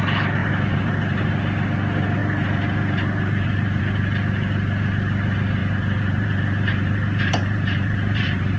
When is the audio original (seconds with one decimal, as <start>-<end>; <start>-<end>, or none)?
0.0-0.4; 1.3-2.2; 3.8-5.6